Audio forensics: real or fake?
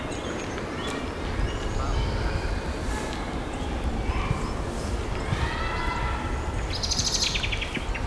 real